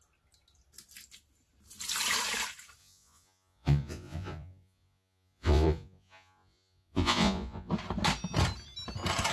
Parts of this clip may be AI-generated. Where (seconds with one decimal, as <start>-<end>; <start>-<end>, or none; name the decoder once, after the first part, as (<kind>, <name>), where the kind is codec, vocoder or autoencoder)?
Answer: 2.8-7.7 (vocoder, Vocos)